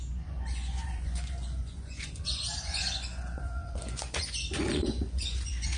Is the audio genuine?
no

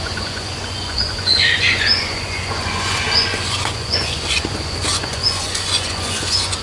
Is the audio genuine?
no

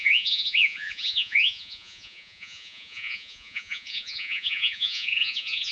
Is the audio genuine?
no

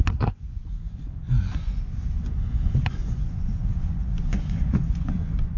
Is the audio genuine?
no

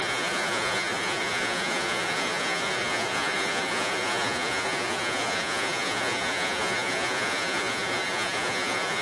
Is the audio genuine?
no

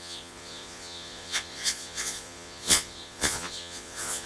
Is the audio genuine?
no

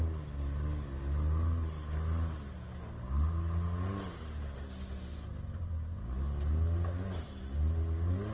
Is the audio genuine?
yes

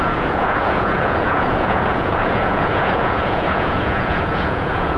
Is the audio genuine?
no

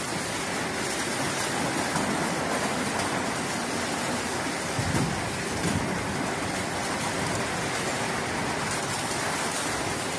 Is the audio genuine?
yes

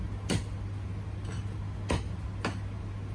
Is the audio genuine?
yes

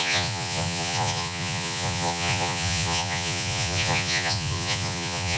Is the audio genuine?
no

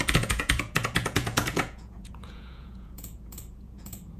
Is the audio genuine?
no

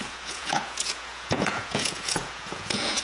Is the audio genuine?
no